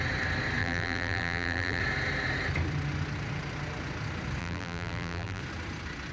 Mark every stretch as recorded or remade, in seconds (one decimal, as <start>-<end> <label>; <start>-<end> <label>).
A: 0.0-0.6 recorded; 0.6-1.8 remade; 1.8-4.4 recorded; 4.4-5.4 remade; 5.4-6.1 recorded